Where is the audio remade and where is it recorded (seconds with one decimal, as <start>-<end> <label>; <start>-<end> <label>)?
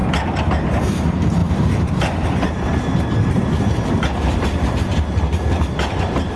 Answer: 0.0-0.5 remade; 0.5-1.4 recorded; 1.4-5.2 remade; 5.2-6.4 recorded